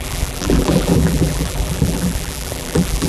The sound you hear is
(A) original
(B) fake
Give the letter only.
B